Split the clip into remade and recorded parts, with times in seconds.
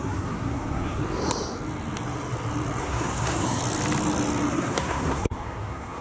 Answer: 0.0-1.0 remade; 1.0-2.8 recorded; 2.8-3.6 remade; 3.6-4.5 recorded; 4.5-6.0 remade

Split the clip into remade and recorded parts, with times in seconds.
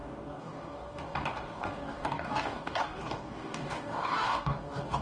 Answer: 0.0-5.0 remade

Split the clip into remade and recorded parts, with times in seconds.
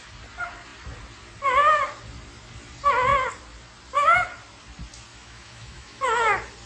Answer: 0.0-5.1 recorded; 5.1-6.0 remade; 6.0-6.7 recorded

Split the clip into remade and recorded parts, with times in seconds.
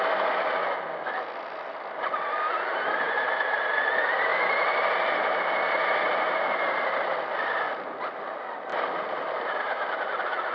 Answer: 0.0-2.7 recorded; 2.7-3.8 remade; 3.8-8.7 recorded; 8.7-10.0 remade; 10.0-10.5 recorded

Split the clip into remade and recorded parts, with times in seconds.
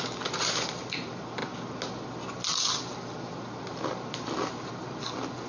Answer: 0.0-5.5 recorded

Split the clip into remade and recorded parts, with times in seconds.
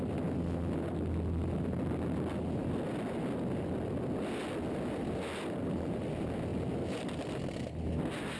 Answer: 0.0-8.4 recorded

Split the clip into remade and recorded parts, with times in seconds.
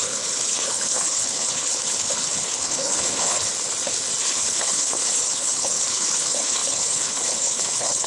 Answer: 0.0-3.5 remade; 3.5-4.2 recorded; 4.2-8.1 remade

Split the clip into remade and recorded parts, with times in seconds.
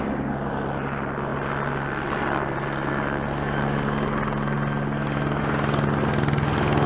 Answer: 0.0-6.9 recorded